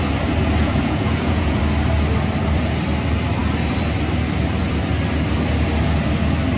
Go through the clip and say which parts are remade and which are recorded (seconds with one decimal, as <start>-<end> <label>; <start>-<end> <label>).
0.0-0.6 recorded; 0.6-1.6 remade; 1.6-6.6 recorded